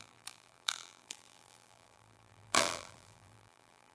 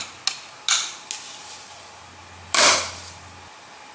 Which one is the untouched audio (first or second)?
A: second